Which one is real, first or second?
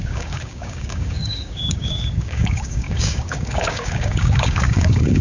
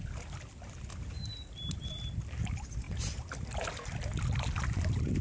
second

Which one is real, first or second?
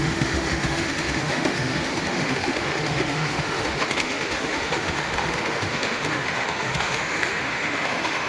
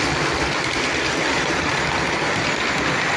second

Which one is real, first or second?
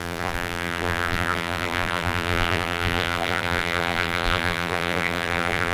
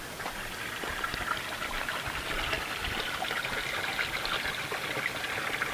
second